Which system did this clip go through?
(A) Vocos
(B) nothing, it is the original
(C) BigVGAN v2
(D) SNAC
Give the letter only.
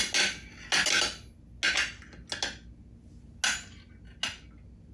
B